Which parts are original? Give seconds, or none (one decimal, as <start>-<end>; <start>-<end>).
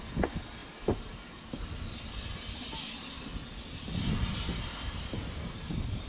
0.0-6.1